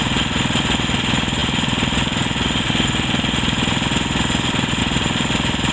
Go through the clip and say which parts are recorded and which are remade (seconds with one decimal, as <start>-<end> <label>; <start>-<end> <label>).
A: 0.0-5.7 recorded